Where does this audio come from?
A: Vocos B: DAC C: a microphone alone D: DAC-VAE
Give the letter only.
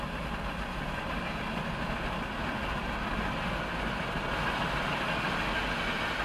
C